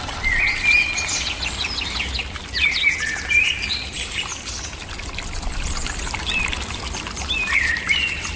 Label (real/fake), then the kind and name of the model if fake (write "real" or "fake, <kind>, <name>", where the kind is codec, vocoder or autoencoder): real